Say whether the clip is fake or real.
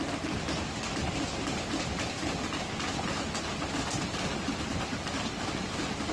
real